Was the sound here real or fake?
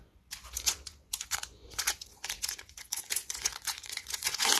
fake